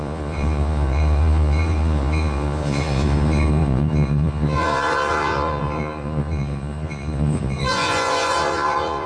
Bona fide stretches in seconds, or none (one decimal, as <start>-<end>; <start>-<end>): none